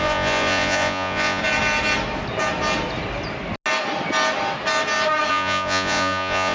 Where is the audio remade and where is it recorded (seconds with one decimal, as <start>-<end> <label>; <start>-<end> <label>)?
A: 0.0-1.4 remade; 1.4-5.3 recorded; 5.3-6.5 remade